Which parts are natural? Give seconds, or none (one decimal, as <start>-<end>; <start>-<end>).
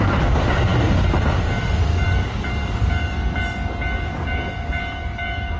0.0-1.9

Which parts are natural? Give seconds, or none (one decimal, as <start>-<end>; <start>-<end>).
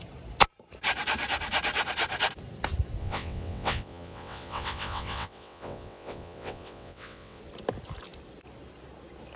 0.0-3.0; 7.4-9.4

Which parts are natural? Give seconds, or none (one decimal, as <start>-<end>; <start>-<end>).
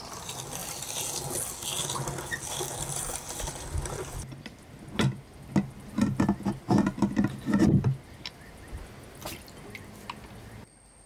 0.0-11.1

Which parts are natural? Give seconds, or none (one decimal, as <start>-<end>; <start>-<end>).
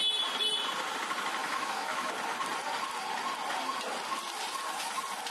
0.0-1.4; 2.1-5.3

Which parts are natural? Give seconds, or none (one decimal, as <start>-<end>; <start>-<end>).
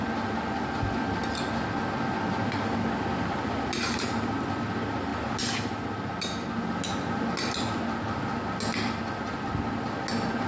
0.0-10.5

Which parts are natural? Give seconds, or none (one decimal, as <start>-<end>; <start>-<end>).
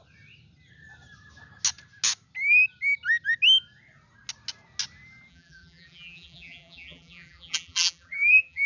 0.0-5.3